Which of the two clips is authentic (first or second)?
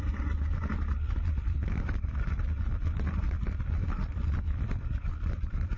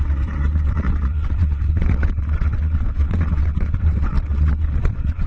first